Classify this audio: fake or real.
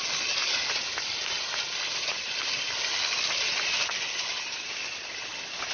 real